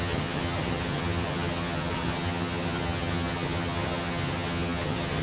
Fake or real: fake